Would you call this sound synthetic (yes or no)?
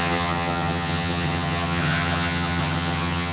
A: yes